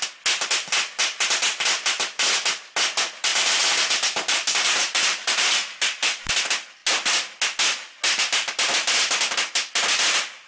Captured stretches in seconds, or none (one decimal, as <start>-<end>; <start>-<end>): 0.0-3.3; 6.3-10.5